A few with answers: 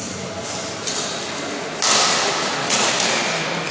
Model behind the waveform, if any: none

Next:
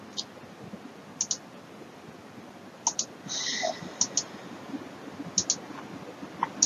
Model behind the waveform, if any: none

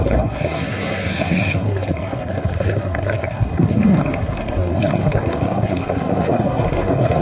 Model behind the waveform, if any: codec, SNAC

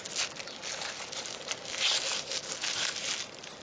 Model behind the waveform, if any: none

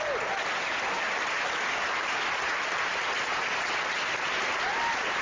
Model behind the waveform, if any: none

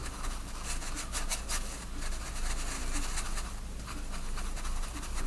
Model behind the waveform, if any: none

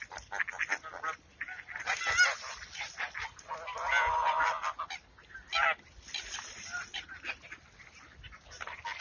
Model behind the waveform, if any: none